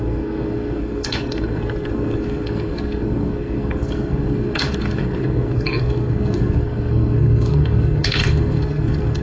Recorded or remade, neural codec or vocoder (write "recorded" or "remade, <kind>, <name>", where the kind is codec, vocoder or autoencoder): remade, codec, SNAC